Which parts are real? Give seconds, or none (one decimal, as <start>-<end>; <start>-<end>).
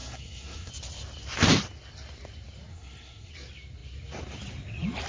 0.7-2.7; 3.3-5.1